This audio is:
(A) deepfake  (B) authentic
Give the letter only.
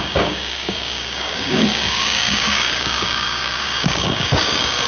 A